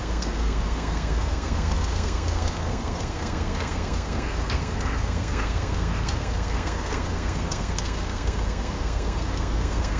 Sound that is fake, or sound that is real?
fake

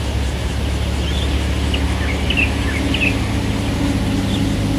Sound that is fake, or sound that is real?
real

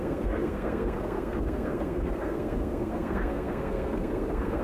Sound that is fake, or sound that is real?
fake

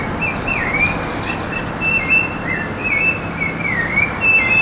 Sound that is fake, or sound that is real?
real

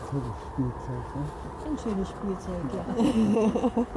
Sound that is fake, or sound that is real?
real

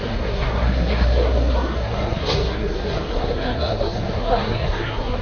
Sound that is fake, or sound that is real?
fake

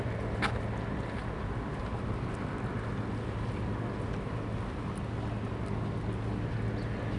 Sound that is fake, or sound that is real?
real